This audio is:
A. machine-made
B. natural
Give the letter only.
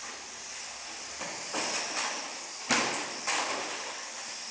B